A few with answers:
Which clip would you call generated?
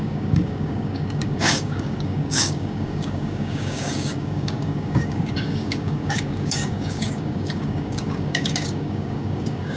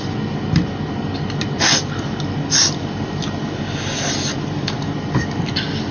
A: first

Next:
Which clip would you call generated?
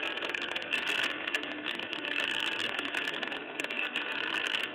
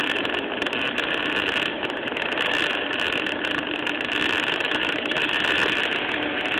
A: first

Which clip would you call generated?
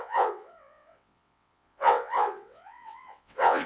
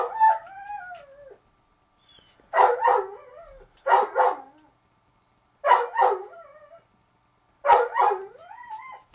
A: first